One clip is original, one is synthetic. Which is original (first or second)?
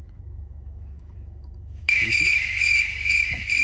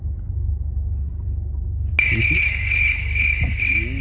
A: second